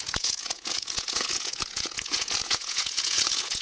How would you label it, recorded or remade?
remade